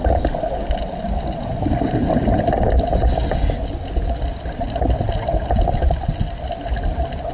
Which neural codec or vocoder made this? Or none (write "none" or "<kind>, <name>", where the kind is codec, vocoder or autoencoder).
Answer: none